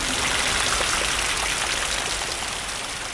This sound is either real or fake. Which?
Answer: real